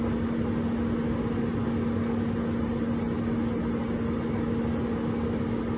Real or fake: real